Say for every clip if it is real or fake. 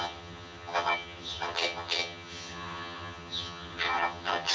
fake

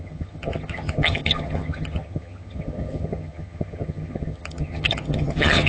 fake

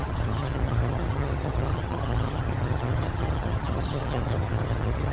fake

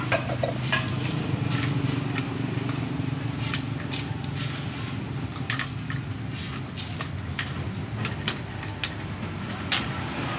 real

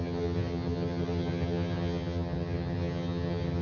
fake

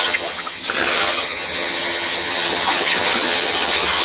fake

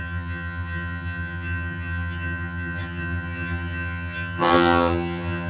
fake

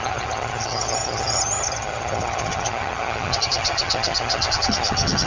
fake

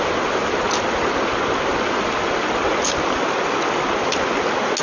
real